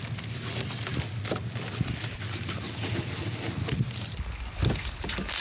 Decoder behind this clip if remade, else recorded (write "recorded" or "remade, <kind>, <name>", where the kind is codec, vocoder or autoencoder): recorded